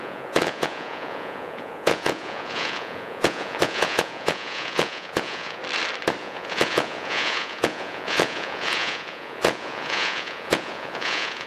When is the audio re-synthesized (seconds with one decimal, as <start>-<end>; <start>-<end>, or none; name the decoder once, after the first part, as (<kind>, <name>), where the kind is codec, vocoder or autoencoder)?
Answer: 0.0-5.6 (vocoder, Vocos); 6.2-11.5

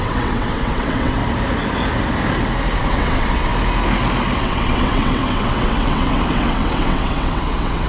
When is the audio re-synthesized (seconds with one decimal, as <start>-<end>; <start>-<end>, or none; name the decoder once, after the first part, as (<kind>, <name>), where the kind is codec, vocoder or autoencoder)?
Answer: 0.0-1.2 (vocoder, WaveNeXt); 2.8-3.5; 4.4-7.9